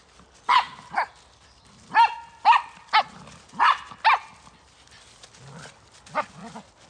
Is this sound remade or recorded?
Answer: recorded